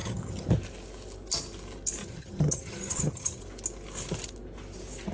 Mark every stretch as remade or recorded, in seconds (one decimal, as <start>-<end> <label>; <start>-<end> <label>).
0.0-0.5 remade; 0.5-2.0 recorded; 2.0-3.4 remade; 3.4-5.1 recorded